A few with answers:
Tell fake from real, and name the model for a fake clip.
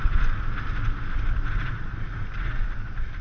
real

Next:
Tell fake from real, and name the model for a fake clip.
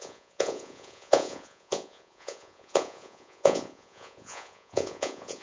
fake, vocoder, Vocos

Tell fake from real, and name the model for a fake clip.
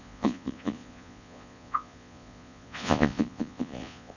fake, vocoder, Vocos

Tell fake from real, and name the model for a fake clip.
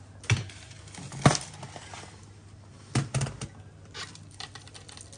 real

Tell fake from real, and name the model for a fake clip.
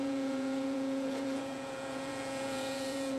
fake, vocoder, Vocos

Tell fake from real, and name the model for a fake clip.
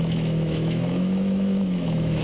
fake, autoencoder, DAC-VAE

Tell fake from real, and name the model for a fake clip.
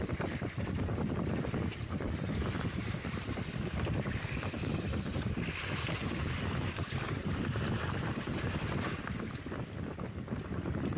real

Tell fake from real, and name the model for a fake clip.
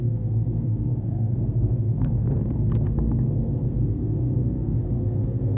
fake, codec, SNAC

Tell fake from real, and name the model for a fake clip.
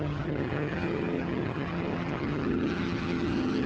fake, vocoder, HiFi-GAN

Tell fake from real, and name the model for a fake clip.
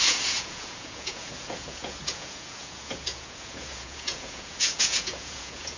fake, vocoder, Vocos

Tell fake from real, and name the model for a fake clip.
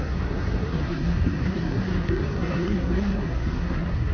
fake, codec, SNAC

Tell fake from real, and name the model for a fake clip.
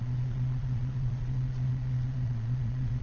fake, vocoder, Vocos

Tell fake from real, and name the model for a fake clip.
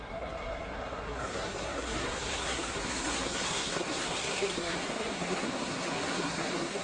fake, codec, SNAC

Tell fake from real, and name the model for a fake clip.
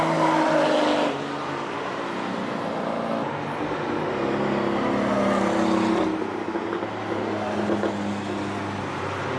real